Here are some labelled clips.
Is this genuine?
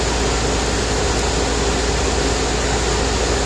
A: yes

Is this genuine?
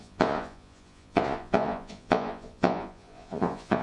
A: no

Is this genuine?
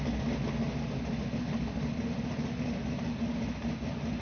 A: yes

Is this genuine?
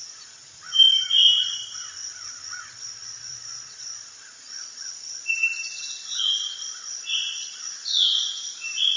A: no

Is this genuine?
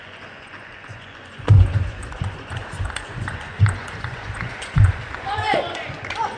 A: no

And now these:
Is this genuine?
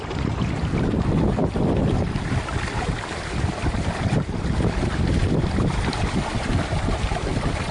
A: no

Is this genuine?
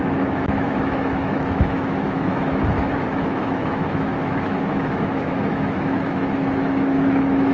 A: no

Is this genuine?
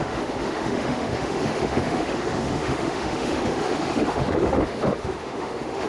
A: no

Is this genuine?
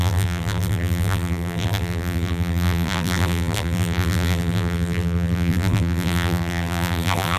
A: no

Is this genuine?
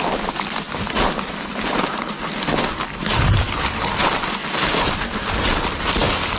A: yes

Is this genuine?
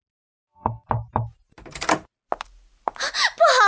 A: yes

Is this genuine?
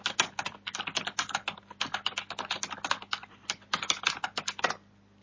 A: yes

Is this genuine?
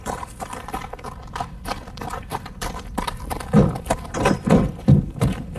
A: no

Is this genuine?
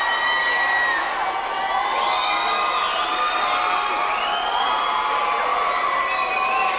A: yes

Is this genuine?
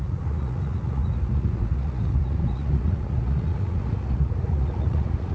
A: no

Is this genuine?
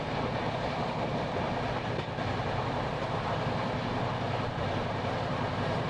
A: yes